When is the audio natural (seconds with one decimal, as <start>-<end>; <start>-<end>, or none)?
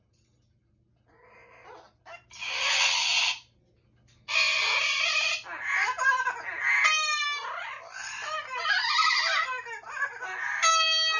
0.0-11.2